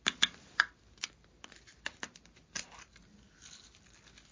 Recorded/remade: recorded